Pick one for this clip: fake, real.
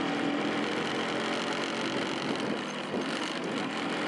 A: real